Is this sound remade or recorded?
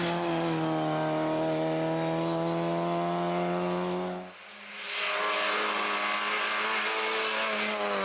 recorded